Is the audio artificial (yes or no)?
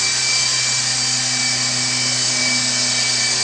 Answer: no